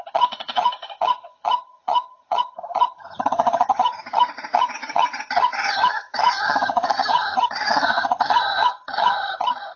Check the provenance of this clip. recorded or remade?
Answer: remade